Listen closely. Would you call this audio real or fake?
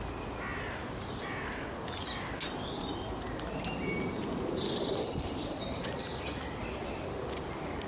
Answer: real